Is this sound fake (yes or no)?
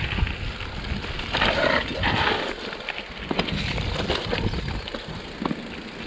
no